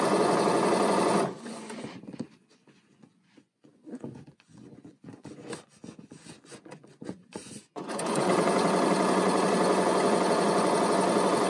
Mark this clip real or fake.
fake